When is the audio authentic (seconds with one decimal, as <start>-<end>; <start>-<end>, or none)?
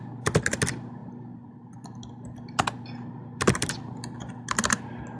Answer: 0.0-5.2